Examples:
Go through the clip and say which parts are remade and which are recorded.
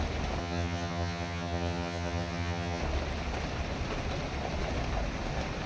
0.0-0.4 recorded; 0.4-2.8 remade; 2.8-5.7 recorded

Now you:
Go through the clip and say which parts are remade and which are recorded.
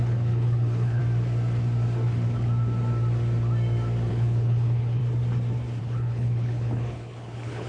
0.0-1.0 remade; 1.0-4.1 recorded; 4.1-5.0 remade; 5.0-5.8 recorded; 5.8-7.7 remade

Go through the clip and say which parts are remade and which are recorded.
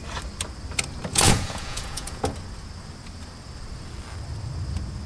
0.0-1.1 recorded; 1.1-2.2 remade; 2.2-5.1 recorded